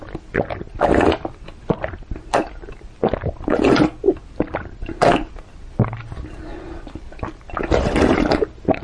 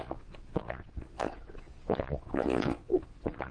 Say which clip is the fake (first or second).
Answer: second